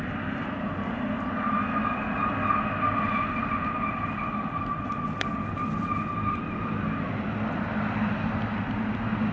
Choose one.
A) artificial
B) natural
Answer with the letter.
B